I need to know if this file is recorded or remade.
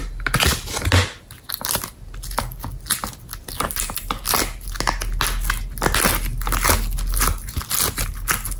recorded